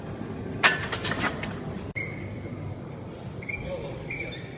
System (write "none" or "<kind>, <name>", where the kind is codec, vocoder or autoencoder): none